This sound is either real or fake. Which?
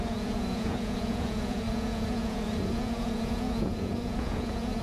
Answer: fake